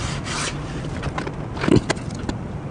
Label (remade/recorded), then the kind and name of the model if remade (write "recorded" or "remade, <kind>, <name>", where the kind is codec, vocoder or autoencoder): recorded